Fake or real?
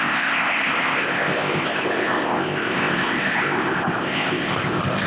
fake